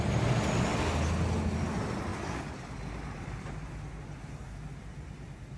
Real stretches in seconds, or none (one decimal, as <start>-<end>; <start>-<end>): 0.0-5.6